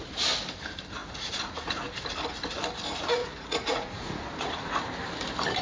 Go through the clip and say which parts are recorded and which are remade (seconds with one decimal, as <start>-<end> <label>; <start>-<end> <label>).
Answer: 0.0-1.0 recorded; 1.0-1.8 remade; 1.8-3.2 recorded; 3.2-4.8 remade; 4.8-5.6 recorded